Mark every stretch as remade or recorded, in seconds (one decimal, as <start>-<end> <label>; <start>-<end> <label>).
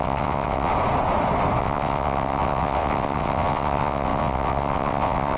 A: 0.0-0.7 remade; 0.7-1.6 recorded; 1.6-5.4 remade